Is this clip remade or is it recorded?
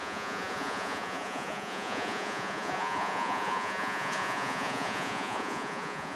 remade